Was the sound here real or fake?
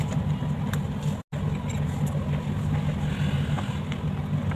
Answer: real